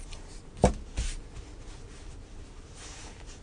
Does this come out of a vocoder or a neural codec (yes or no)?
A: no